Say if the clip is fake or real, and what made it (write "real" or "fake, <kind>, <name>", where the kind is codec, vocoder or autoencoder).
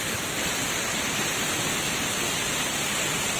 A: real